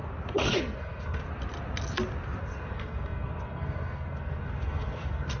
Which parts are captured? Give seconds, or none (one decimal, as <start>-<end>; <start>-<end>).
0.0-0.6; 1.2-2.4